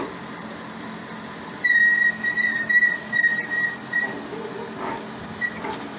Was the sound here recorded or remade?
recorded